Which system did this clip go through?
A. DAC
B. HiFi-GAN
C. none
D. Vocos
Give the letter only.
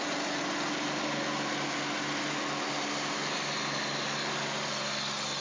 C